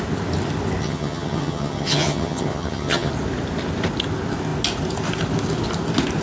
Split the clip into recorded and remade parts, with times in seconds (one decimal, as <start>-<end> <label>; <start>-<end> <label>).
0.0-0.8 recorded; 0.8-3.1 remade; 3.1-6.2 recorded